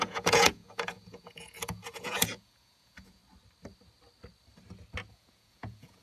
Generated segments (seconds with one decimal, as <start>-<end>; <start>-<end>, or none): 0.0-3.2; 5.1-6.0